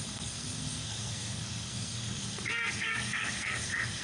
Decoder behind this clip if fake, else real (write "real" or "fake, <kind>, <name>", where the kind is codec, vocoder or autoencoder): fake, codec, SNAC